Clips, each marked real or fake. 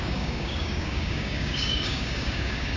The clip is fake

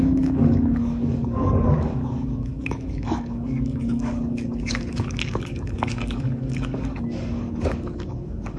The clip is fake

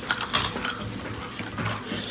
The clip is real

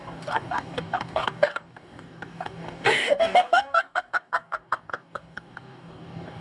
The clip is fake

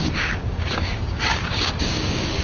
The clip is fake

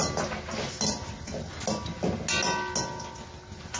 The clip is real